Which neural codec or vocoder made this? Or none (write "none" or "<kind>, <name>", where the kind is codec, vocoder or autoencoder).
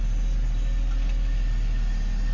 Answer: none